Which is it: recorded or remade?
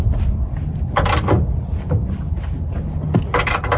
recorded